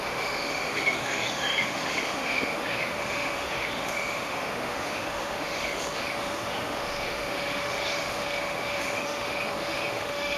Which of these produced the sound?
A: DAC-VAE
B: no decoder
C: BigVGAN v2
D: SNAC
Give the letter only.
A